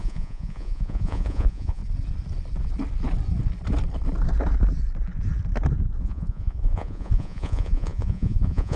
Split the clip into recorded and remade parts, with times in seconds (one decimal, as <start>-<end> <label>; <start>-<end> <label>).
0.0-1.8 remade; 1.8-6.0 recorded; 6.0-8.8 remade